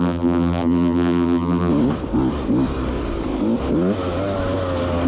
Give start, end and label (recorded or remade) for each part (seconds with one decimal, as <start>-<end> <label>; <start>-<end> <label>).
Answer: 0.0-1.7 remade; 1.7-5.1 recorded